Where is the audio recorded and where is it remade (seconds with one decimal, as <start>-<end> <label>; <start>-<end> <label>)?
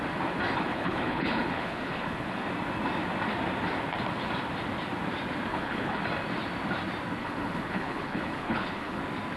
0.0-0.7 recorded; 0.7-2.5 remade; 2.5-5.5 recorded; 5.5-6.0 remade; 6.0-7.2 recorded; 7.2-9.0 remade; 9.0-9.4 recorded